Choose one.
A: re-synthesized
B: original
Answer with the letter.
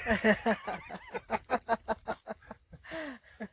B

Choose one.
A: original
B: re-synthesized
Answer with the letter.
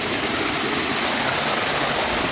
A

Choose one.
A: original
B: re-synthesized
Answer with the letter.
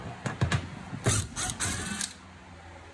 A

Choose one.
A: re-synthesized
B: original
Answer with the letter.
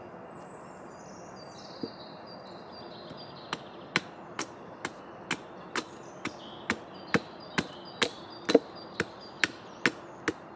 B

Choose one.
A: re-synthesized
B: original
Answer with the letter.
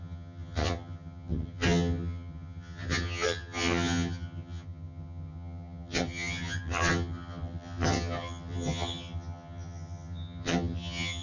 A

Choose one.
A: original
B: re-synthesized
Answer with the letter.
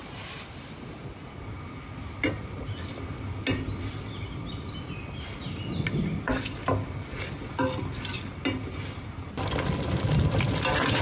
A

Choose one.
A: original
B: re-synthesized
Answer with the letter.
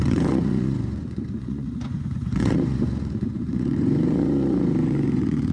B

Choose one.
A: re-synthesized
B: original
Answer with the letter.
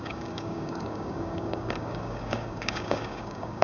A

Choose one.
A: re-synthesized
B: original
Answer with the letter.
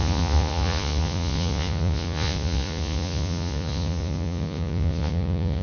A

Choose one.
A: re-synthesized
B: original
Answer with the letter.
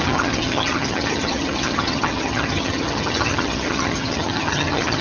A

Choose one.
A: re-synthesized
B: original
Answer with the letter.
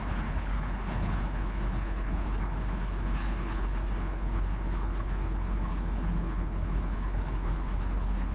A